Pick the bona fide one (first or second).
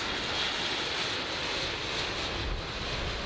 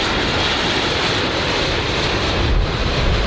first